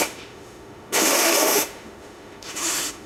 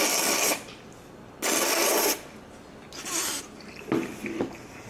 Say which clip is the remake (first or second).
first